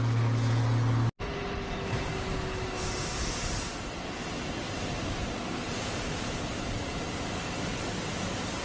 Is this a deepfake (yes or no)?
no